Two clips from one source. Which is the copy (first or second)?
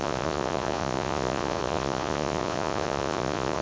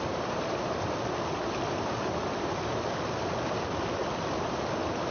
first